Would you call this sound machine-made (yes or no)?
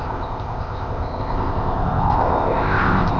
yes